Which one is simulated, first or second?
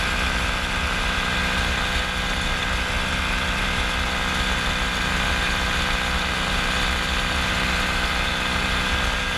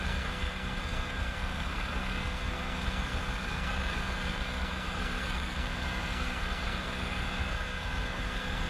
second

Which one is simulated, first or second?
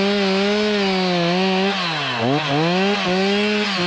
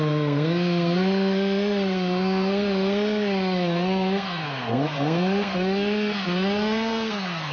second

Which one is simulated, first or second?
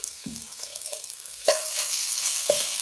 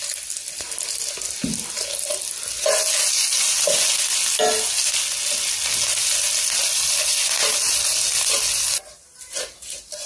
first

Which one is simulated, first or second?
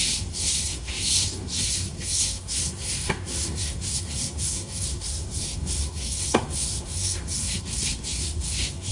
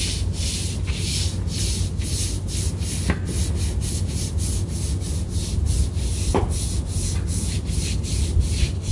first